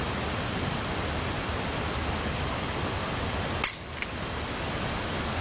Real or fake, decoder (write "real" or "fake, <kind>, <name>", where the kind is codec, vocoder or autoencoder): real